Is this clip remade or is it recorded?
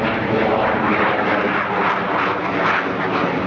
recorded